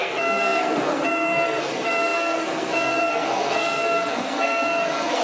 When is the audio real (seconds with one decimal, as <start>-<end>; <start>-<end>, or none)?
none